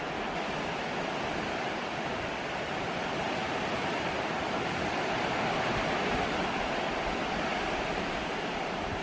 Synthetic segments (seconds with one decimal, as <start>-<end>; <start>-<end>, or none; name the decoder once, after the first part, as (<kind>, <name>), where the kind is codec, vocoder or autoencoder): 1.3-7.5 (vocoder, BigVGAN v2)